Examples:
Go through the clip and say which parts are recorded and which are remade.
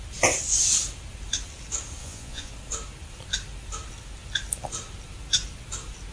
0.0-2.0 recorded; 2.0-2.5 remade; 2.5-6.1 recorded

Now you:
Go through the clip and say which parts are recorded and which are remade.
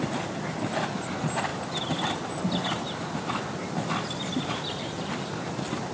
0.0-5.9 recorded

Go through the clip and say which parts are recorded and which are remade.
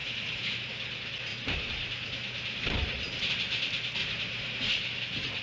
0.0-0.6 remade; 0.6-1.3 recorded; 1.3-3.3 remade; 3.3-4.0 recorded; 4.0-4.7 remade; 4.7-5.4 recorded